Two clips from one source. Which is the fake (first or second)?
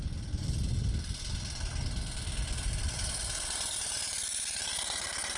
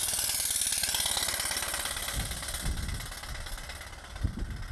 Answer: first